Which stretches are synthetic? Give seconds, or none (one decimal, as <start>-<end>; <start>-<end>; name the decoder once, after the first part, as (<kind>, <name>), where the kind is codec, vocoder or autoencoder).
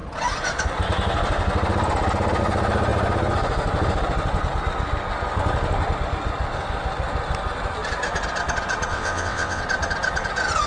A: 8.9-9.6 (vocoder, WaveNeXt)